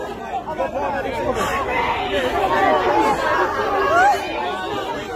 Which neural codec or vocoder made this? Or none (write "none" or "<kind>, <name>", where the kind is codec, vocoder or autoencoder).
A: none